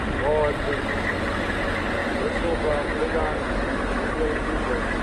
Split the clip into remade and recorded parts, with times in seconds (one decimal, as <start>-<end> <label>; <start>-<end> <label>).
0.0-5.0 recorded